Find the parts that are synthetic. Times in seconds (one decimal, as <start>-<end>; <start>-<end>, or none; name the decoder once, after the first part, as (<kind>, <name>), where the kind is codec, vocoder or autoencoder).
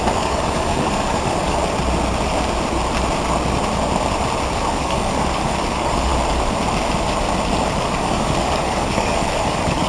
0.0-1.6 (codec, DAC); 4.5-6.1; 7.8-9.9